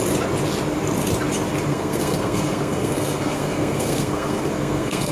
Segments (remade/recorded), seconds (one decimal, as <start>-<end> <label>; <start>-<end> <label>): 0.0-1.7 recorded; 1.7-5.1 remade